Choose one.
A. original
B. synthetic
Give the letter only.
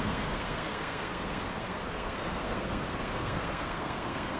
B